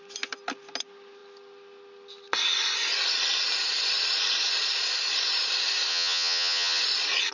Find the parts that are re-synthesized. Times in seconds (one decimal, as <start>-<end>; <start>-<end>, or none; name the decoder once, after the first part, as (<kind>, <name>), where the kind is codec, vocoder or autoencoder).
5.9-6.8 (vocoder, HiFi-GAN)

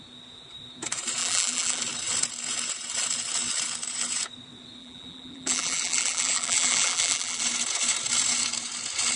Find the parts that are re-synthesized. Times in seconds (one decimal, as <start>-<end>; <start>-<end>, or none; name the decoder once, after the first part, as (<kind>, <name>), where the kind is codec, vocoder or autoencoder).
1.2-1.8 (vocoder, BigVGAN v2); 4.8-7.4